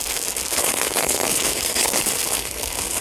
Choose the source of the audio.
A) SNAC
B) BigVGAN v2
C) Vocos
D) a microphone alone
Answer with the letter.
A